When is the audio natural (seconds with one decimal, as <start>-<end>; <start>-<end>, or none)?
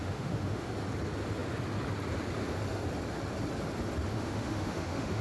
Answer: 0.7-4.1